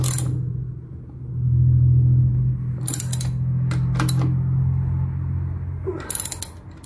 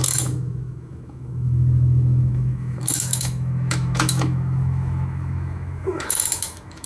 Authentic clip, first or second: first